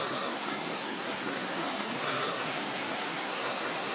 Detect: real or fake fake